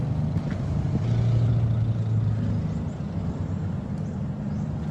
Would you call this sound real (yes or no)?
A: yes